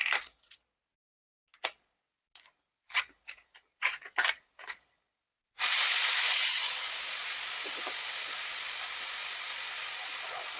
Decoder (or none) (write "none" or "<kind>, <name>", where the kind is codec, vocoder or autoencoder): none